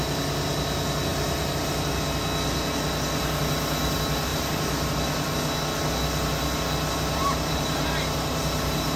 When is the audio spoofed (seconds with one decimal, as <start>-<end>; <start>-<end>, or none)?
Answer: 1.1-2.2; 4.3-4.9; 7.2-9.0